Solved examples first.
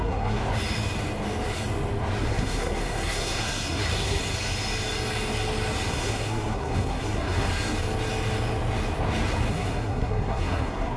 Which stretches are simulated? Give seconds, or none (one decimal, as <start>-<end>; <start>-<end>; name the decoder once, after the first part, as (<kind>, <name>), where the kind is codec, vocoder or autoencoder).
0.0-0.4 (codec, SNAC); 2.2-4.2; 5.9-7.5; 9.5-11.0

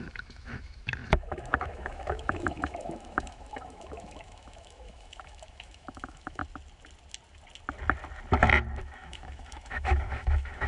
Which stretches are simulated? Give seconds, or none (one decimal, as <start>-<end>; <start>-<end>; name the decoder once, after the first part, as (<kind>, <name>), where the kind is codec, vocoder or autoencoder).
0.0-6.4 (autoencoder, DAC-VAE); 8.8-10.7

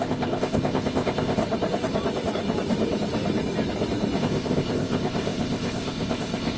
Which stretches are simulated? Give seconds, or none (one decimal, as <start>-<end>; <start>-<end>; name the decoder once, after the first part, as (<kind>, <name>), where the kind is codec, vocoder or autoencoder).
0.0-1.4 (codec, ZipCodec); 4.2-6.6

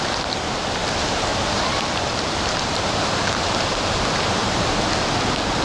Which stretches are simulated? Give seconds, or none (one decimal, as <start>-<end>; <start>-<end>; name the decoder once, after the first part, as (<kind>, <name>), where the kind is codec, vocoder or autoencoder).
0.8-4.0 (vocoder, BigVGAN v2); 4.4-5.6

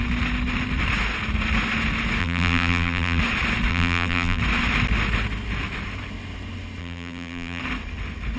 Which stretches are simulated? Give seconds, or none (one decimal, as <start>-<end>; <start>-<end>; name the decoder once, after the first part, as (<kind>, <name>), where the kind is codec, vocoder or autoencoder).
2.2-3.2 (vocoder, BigVGAN v2); 3.7-4.4; 6.8-7.6

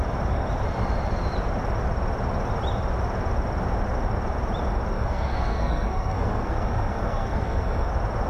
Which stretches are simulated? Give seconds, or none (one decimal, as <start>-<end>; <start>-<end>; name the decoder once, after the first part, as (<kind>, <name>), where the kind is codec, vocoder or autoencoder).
4.9-7.9 (codec, SNAC)

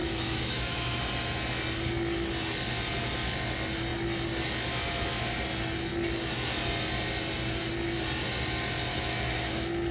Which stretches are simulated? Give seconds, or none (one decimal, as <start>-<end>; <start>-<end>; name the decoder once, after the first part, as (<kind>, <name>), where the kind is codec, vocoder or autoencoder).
0.0-1.0 (autoencoder, DAC-VAE); 8.9-9.9

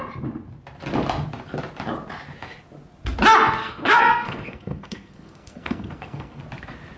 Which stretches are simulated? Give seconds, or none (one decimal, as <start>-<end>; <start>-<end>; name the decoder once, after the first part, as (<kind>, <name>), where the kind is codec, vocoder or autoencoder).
3.6-6.4 (codec, SNAC)